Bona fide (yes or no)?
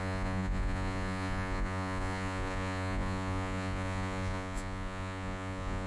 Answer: no